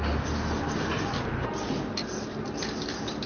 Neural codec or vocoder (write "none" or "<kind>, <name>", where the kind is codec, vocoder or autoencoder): none